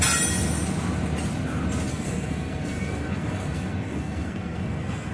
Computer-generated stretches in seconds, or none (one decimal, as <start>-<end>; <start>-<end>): 1.9-5.1

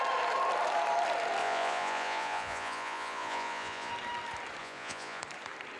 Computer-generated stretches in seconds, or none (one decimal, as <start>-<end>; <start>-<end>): 1.4-3.9; 4.6-5.2

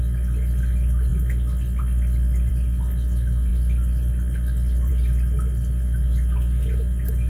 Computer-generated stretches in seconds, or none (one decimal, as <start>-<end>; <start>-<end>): none